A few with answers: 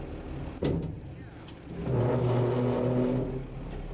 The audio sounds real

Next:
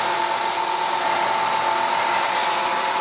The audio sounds real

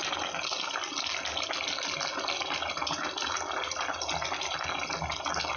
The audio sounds real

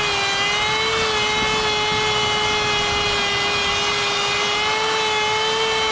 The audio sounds real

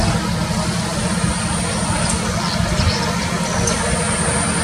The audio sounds real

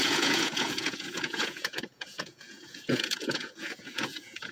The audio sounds fake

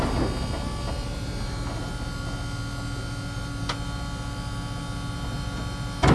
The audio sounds real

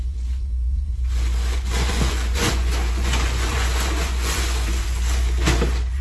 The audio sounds fake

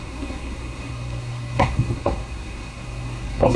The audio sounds fake